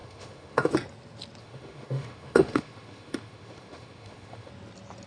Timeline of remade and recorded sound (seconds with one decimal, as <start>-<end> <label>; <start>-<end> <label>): 0.0-0.7 remade; 0.7-1.4 recorded; 1.4-4.5 remade; 4.5-5.1 recorded